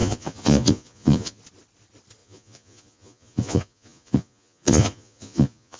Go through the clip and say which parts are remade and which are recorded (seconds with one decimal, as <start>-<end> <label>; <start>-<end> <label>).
0.0-1.4 remade; 1.4-2.2 recorded; 2.2-5.8 remade